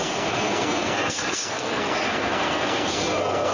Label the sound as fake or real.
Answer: fake